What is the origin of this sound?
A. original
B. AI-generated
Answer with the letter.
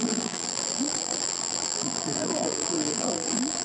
B